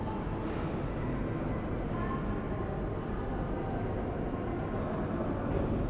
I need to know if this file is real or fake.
real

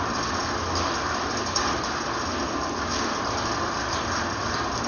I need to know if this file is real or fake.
real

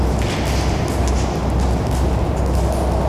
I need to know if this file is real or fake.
real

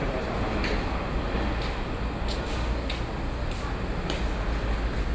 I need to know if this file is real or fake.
real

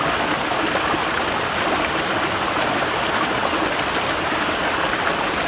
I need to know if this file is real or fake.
real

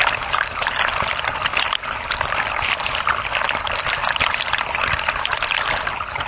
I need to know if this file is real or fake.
real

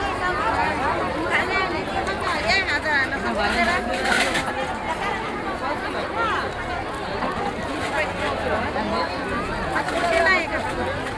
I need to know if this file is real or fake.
real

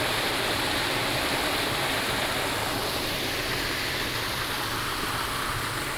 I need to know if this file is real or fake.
real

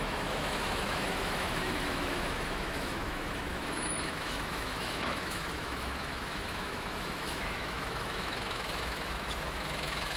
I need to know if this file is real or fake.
fake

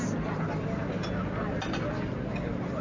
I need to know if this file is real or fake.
real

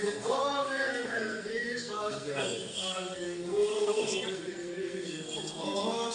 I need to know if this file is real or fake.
fake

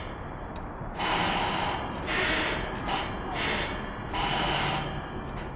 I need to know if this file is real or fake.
real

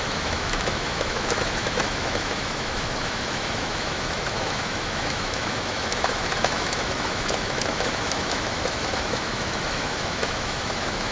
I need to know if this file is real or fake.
fake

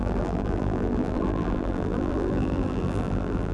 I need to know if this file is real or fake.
fake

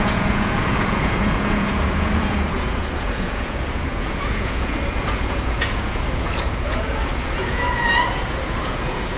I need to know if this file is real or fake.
fake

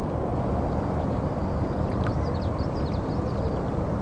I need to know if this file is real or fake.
fake